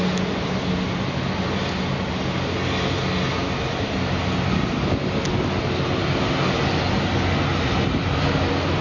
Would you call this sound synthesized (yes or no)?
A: no